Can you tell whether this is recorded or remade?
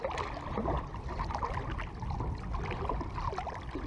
recorded